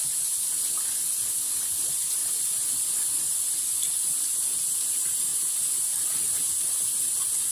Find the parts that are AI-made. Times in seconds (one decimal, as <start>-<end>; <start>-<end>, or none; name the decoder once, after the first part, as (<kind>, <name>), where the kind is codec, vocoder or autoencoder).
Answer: none